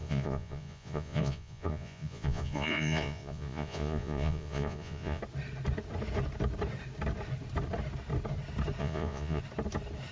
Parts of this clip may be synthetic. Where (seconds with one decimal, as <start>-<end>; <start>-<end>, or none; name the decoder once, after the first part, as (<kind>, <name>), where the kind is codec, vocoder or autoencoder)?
0.0-5.2 (vocoder, Vocos); 8.8-9.4